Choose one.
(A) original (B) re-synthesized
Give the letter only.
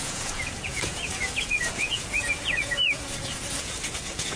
B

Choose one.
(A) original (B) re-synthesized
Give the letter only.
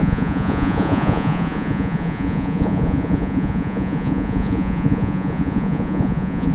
B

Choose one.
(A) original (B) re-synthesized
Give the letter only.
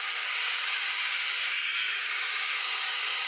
B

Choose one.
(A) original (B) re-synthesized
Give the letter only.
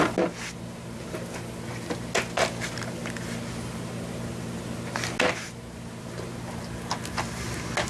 A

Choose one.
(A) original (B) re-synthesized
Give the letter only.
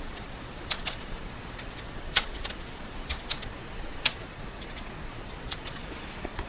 B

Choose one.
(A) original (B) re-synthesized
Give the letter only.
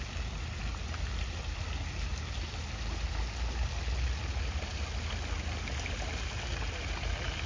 A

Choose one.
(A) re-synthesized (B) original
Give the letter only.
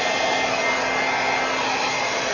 B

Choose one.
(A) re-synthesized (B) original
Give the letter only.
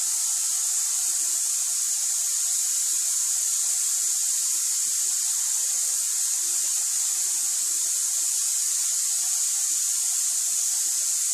B